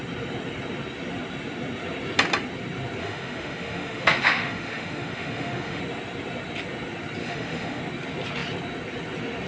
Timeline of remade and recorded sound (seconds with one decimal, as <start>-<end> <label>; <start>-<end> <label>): 0.0-3.0 recorded; 3.0-5.8 remade; 5.8-7.2 recorded; 7.2-7.8 remade; 7.8-9.5 recorded